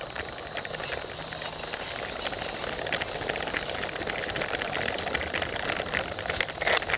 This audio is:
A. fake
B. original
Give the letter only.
B